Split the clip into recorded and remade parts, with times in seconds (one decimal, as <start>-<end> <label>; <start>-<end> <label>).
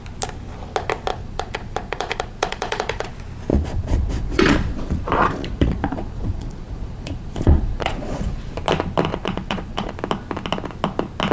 0.0-1.1 recorded; 1.1-3.1 remade; 3.1-3.5 recorded; 3.5-8.5 remade; 8.5-9.1 recorded; 9.1-9.9 remade; 9.9-11.3 recorded